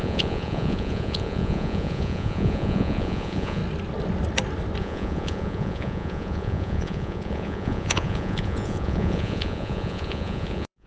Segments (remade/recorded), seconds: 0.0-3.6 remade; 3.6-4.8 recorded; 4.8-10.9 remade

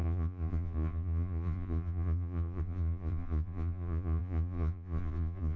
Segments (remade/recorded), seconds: 0.0-5.6 remade

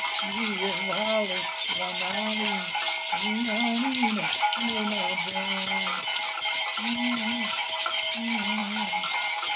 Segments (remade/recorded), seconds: 0.0-9.6 recorded

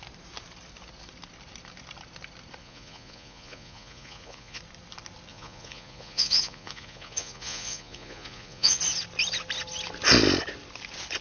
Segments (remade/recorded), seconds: 0.0-2.6 recorded; 2.6-4.6 remade; 4.6-5.3 recorded; 5.3-8.8 remade; 8.8-11.2 recorded

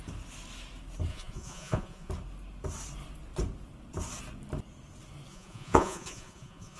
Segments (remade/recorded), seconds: 0.0-1.1 recorded; 1.1-2.1 remade; 2.1-5.3 recorded; 5.3-6.8 remade